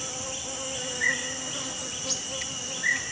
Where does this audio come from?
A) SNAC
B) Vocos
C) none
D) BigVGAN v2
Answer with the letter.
C